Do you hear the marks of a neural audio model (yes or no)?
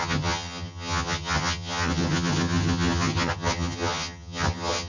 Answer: yes